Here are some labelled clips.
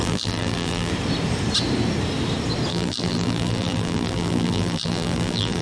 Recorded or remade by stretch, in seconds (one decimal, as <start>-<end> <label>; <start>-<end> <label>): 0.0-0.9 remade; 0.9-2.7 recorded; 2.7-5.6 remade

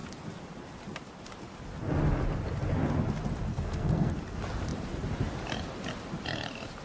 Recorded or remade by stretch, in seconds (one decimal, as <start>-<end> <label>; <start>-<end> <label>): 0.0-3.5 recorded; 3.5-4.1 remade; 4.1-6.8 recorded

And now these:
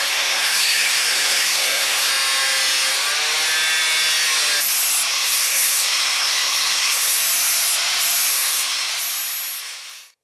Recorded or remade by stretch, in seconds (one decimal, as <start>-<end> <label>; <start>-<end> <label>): 0.0-2.1 remade; 2.1-5.1 recorded; 5.1-7.2 remade; 7.2-8.3 recorded; 8.3-8.9 remade; 8.9-9.6 recorded; 9.6-10.2 remade